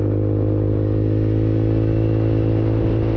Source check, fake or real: real